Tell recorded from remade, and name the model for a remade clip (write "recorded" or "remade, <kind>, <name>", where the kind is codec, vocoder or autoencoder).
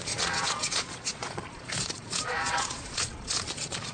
remade, vocoder, Vocos